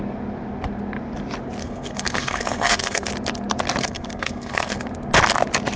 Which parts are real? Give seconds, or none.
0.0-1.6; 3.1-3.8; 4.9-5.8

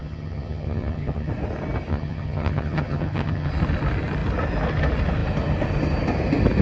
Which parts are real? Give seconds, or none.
1.3-1.9; 3.5-6.6

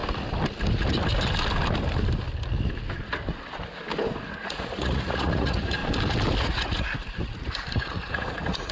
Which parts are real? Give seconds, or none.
0.0-4.4; 5.8-6.4

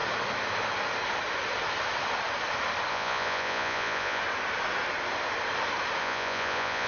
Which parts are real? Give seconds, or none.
0.0-2.9; 4.2-6.0

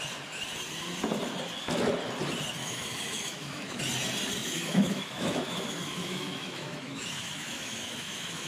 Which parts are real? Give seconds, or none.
0.0-2.6; 3.8-4.4